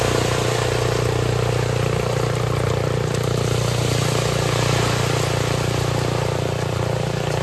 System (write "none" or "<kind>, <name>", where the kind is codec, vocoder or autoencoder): none